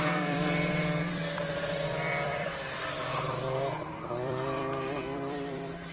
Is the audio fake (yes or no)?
yes